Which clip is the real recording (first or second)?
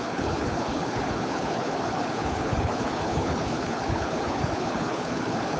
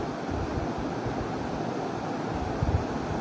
second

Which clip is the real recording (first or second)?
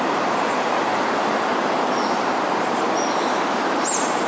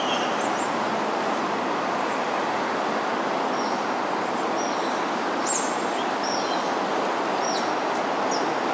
second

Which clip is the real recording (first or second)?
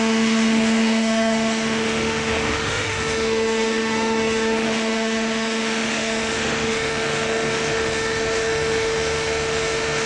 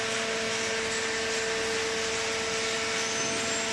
second